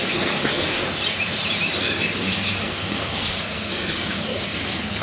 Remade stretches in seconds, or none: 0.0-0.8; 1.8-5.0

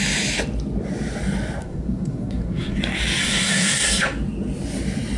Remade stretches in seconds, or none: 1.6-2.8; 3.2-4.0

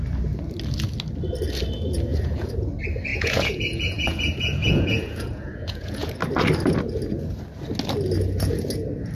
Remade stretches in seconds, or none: 2.1-2.7; 3.1-6.1

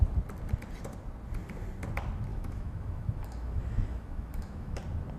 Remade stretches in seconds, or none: 2.3-4.8

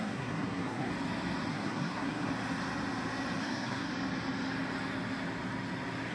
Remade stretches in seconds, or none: 0.0-0.9; 1.5-2.3; 3.4-3.9

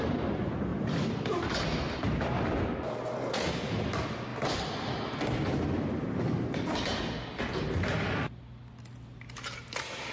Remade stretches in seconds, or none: 0.7-2.1; 4.3-5.0